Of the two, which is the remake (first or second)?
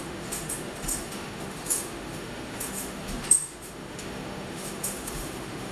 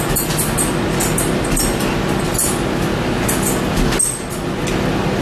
first